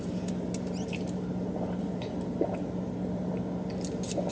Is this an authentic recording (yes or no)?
yes